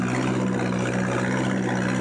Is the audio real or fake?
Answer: real